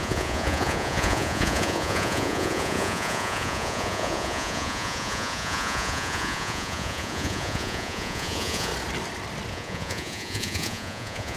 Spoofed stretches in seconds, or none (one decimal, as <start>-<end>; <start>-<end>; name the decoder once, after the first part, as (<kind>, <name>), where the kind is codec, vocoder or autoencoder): 0.0-8.7 (vocoder, Vocos); 9.5-11.4